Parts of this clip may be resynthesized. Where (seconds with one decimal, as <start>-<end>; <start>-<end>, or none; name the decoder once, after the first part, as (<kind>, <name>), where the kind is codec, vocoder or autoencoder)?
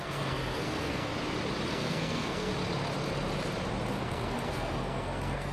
0.0-1.1 (codec, SNAC); 1.7-2.5; 4.0-5.5